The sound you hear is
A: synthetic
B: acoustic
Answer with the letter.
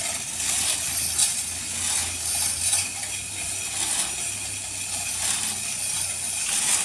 B